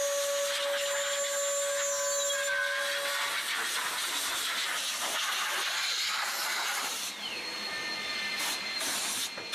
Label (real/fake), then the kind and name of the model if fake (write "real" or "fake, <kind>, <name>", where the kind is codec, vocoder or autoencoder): real